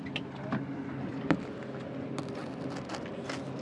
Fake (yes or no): no